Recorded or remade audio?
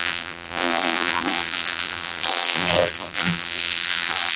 remade